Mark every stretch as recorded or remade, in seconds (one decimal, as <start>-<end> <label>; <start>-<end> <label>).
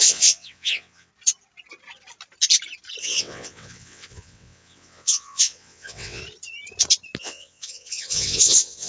0.0-1.1 remade; 1.1-3.0 recorded; 3.0-6.2 remade; 6.2-7.2 recorded; 7.2-8.9 remade